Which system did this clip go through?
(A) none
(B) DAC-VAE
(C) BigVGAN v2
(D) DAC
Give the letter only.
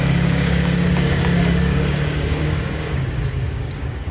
D